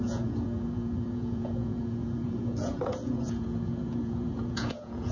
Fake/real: fake